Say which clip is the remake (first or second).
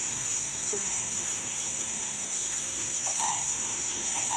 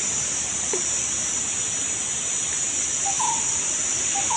first